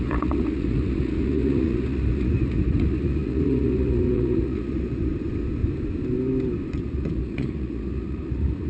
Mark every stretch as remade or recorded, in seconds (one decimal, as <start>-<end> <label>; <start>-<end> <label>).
0.0-5.1 remade; 5.1-6.7 recorded; 6.7-8.7 remade